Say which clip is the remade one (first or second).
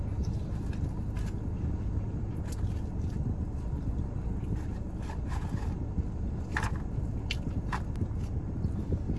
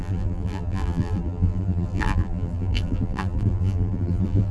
second